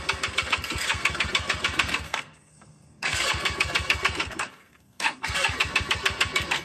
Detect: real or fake fake